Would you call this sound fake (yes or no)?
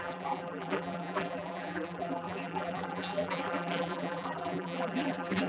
yes